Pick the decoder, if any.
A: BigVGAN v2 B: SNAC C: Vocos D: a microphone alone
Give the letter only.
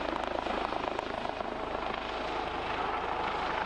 D